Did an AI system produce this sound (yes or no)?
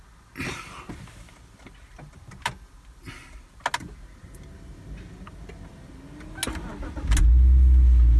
no